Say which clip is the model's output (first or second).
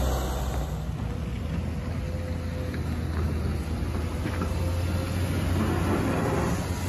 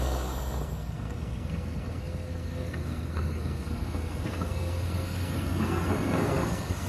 second